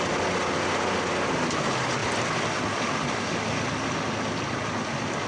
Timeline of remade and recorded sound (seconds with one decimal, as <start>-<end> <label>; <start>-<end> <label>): 0.0-5.3 recorded